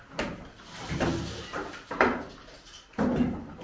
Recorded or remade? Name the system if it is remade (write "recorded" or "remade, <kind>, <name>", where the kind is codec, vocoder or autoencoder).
recorded